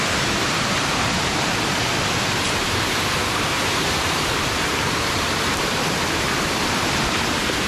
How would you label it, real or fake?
fake